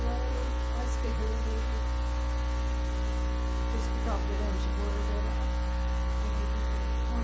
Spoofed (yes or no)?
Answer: no